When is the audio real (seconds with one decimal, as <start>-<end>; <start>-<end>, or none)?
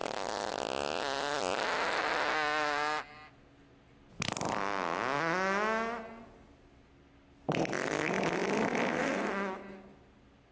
0.5-10.5